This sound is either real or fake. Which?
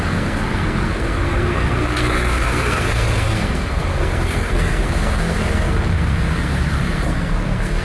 fake